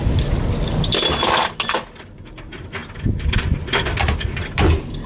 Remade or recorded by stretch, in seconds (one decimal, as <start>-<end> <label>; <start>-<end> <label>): 0.0-5.1 recorded

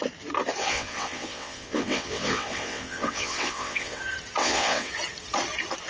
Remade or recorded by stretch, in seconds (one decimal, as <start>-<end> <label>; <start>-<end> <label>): 0.0-0.6 recorded; 0.6-4.0 remade; 4.0-4.4 recorded; 4.4-4.9 remade; 4.9-5.9 recorded

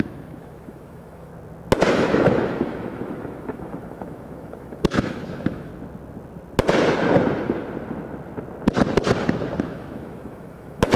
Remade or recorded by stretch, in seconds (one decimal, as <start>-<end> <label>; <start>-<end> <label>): 0.0-1.3 remade; 1.3-1.9 recorded; 1.9-5.7 remade; 5.7-9.6 recorded; 9.6-11.0 remade

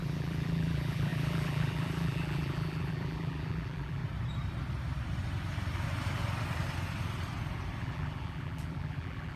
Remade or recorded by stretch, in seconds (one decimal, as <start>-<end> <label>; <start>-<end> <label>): 0.0-4.0 remade; 4.0-7.8 recorded; 7.8-9.4 remade

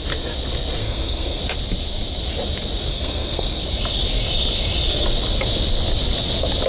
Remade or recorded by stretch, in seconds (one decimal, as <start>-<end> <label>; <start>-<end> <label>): 0.0-0.8 recorded; 0.8-1.4 remade; 1.4-2.9 recorded; 2.9-3.6 remade; 3.6-6.7 recorded